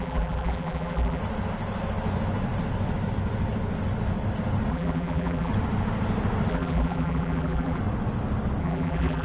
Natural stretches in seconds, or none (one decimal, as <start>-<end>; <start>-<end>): 1.2-4.7; 5.5-6.5; 7.8-8.6